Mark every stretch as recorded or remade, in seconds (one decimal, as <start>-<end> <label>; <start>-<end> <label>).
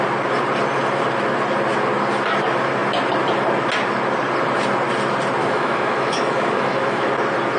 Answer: 0.0-5.4 recorded; 5.4-7.1 remade; 7.1-7.6 recorded